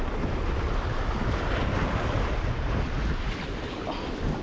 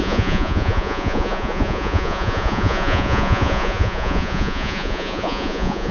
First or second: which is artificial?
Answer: second